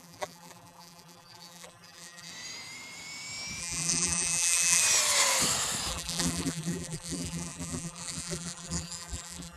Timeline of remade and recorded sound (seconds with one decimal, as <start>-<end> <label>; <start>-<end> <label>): 0.0-2.3 remade; 2.3-3.6 recorded; 3.6-4.8 remade; 4.8-5.9 recorded; 5.9-9.6 remade